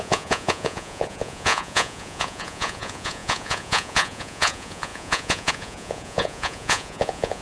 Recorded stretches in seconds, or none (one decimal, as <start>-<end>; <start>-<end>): none